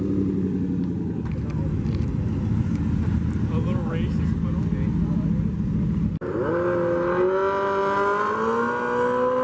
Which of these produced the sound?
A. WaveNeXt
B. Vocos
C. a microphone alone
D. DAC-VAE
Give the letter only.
C